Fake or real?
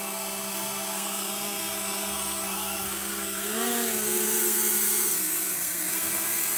fake